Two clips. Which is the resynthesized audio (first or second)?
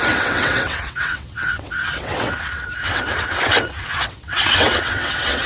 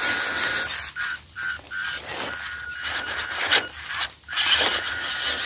first